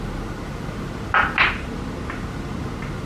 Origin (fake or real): real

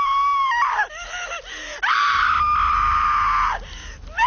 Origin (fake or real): real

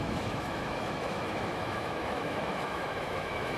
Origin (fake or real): fake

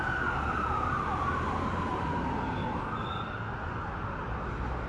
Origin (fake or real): real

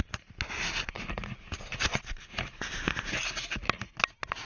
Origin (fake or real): real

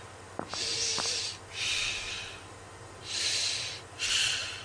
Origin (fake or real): real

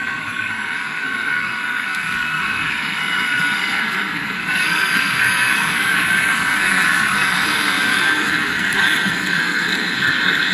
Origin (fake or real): fake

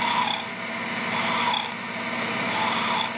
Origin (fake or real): real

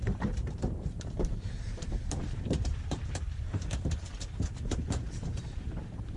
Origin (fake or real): fake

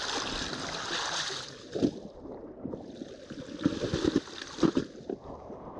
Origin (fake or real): real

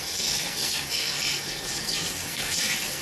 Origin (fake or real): fake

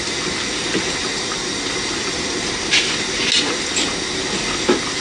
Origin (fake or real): real